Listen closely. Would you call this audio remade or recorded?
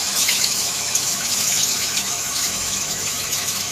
remade